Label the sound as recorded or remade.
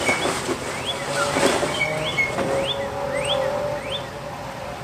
recorded